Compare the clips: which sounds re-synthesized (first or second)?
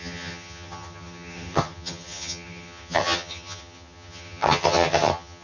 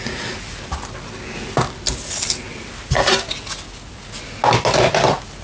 first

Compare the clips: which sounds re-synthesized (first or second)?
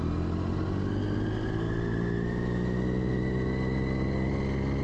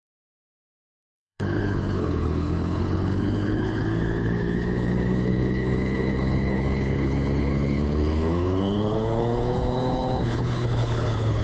second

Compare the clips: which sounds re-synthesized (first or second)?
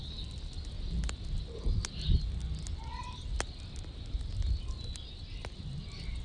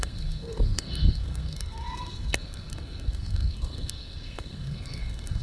second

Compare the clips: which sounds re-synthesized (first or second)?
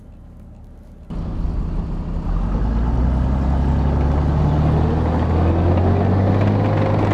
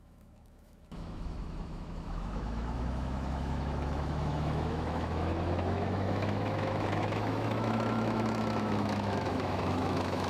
second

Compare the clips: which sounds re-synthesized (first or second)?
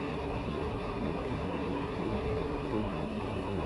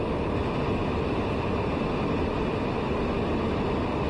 first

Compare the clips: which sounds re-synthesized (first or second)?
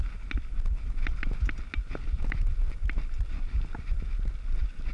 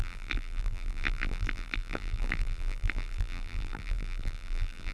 second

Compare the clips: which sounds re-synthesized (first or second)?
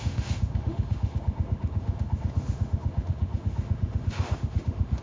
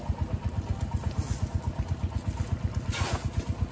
first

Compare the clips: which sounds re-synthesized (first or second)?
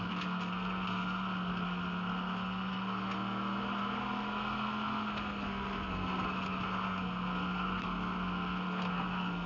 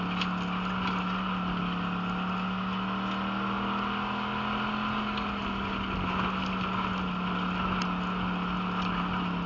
first